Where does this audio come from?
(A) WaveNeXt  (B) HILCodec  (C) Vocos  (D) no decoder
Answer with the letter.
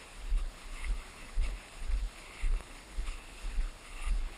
B